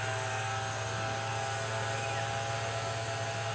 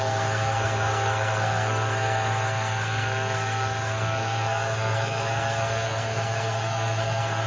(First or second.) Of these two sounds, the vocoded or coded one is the second